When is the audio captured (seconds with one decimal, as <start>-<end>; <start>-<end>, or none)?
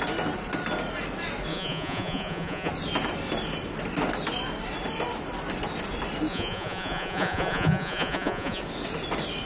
0.0-1.5; 2.7-6.3; 8.6-9.5